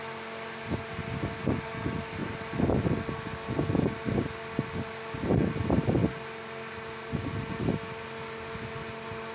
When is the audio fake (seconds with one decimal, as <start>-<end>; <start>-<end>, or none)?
none